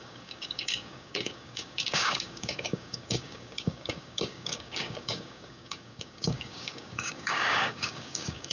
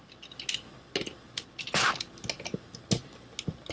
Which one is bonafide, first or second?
second